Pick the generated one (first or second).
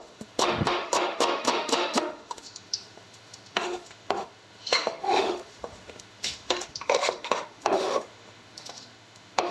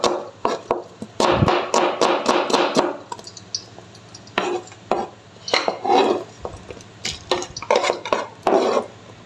first